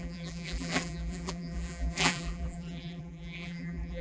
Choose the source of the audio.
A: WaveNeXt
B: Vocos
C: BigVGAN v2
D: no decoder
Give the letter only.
C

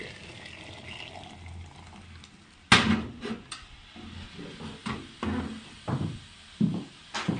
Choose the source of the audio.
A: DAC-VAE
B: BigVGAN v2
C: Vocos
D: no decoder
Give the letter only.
D